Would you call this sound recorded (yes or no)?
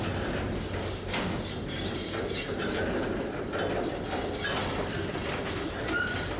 yes